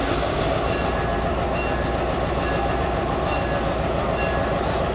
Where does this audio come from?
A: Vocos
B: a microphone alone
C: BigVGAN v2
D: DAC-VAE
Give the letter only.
B